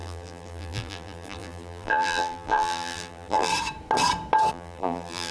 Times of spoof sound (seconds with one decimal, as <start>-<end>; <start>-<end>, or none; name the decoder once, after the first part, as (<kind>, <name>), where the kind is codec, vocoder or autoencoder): 0.0-3.5 (vocoder, BigVGAN v2); 4.5-5.3